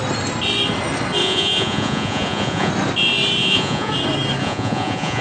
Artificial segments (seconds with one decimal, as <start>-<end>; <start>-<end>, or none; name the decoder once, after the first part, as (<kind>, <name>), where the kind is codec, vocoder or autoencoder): 1.2-2.7 (vocoder, Vocos); 3.4-3.9; 4.4-5.2